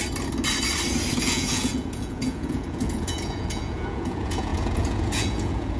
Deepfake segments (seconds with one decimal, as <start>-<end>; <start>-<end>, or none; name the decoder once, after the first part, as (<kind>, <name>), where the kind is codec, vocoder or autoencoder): 1.2-5.8 (vocoder, Vocos)